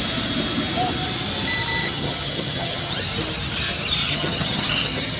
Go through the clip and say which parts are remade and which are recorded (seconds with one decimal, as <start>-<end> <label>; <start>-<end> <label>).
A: 0.0-1.8 recorded; 1.8-3.0 remade; 3.0-4.0 recorded; 4.0-5.2 remade

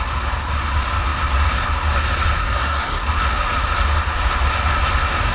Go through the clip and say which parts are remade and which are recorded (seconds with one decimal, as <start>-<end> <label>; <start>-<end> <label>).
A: 0.0-2.4 recorded; 2.4-3.0 remade; 3.0-5.3 recorded

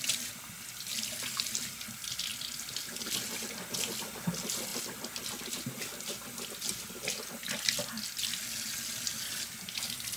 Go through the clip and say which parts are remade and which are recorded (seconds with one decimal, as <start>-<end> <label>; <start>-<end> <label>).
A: 0.0-10.2 recorded

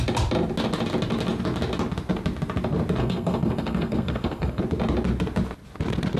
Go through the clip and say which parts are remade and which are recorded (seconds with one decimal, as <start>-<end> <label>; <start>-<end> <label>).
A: 0.0-3.0 recorded; 3.0-4.6 remade; 4.6-6.2 recorded

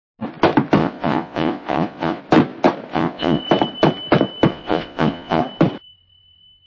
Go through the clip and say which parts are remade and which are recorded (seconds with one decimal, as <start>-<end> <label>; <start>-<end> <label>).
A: 0.0-0.8 recorded; 0.8-2.2 remade; 2.2-2.9 recorded; 2.9-3.4 remade; 3.4-4.5 recorded; 4.5-5.4 remade; 5.4-6.7 recorded

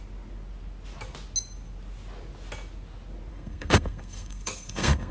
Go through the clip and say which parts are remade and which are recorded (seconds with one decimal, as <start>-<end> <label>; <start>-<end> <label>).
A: 0.0-3.3 recorded; 3.3-5.1 remade

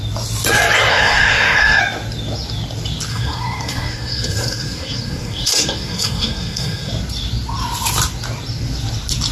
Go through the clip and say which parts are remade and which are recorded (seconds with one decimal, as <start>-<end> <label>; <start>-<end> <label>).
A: 0.0-0.9 recorded; 0.9-1.8 remade; 1.8-3.1 recorded; 3.1-6.9 remade; 6.9-9.3 recorded